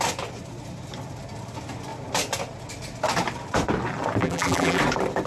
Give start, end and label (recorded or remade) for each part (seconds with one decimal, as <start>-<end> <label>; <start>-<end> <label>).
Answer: 0.0-4.2 recorded; 4.2-4.8 remade; 4.8-5.3 recorded